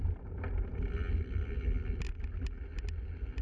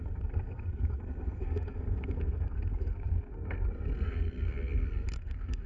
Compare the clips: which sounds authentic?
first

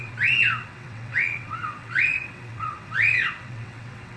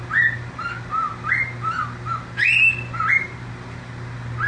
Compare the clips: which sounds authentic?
second